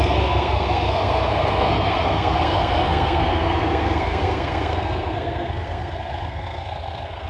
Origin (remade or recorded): remade